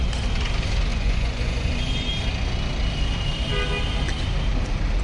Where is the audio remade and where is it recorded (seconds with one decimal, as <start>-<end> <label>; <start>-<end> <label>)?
0.0-0.9 recorded; 0.9-2.1 remade; 2.1-5.0 recorded